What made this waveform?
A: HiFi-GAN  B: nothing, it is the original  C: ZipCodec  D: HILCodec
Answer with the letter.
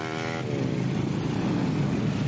B